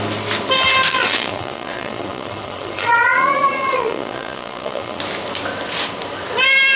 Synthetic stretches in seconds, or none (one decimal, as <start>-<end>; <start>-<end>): 0.9-5.0